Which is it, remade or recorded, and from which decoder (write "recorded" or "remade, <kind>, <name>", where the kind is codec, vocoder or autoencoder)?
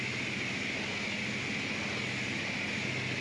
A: recorded